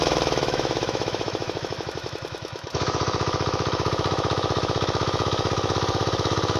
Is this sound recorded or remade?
remade